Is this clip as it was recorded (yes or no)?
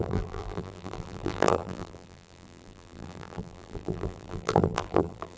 no